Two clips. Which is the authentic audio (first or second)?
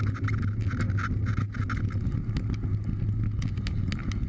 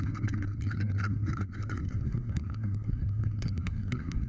first